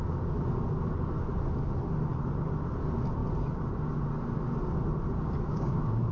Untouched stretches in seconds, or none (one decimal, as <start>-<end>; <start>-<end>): 0.0-5.5